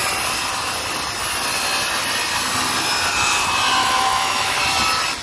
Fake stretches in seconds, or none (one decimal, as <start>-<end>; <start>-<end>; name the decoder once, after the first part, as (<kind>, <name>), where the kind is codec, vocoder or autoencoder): 3.8-4.6 (autoencoder, DAC-VAE)